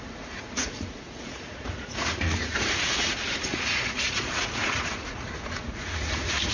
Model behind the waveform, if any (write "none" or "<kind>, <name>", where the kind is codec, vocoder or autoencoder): vocoder, Vocos